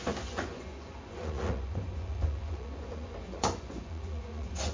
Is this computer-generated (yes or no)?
yes